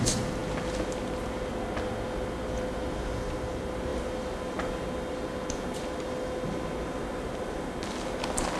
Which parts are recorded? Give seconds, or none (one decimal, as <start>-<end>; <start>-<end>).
0.0-8.6